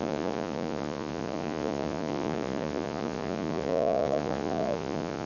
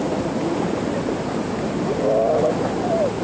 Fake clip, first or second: first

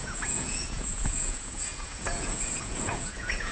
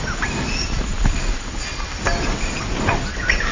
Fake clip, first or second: first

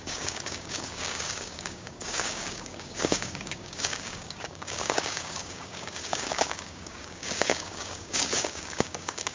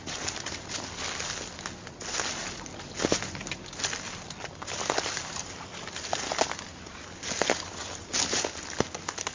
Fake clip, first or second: first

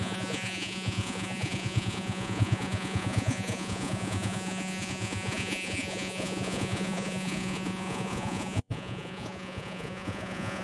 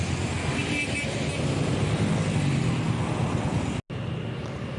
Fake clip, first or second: first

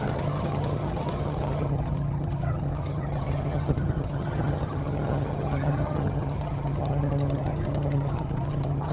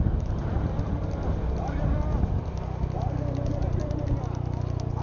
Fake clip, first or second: first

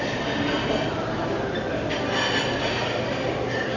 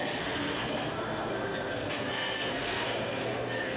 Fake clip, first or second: second